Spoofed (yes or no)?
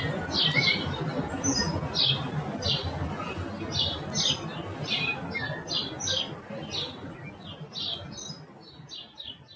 no